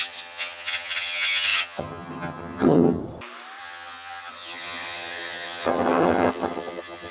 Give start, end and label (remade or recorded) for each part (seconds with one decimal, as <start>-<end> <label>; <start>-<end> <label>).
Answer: 0.0-3.0 remade; 3.0-3.6 recorded; 3.6-7.1 remade